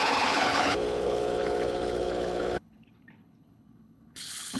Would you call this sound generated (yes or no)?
yes